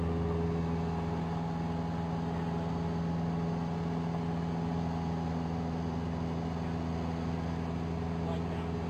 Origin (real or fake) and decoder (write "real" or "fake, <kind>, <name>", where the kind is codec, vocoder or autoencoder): real